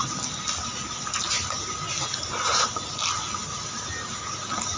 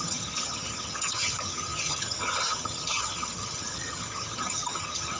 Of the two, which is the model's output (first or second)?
second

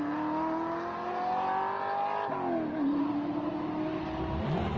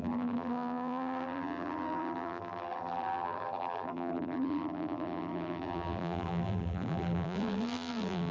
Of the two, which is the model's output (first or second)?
second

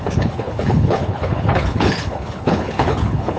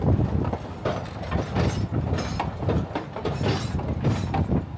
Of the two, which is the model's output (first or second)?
first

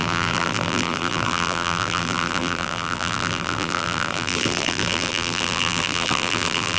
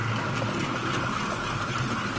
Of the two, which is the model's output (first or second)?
first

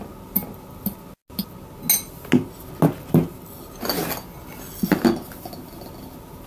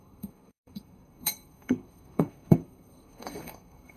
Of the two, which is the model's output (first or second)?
second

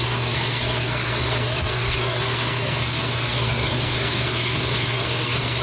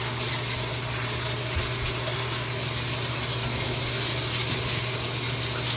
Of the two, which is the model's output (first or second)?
first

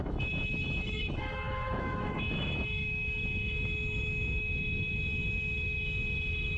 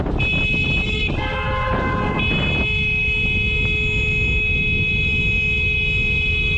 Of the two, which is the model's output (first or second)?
first